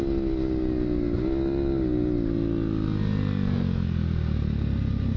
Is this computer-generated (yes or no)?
no